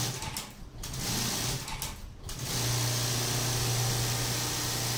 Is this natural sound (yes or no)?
yes